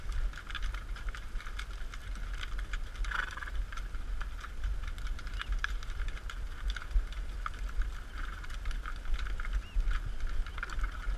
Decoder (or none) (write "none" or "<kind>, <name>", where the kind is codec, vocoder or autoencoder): none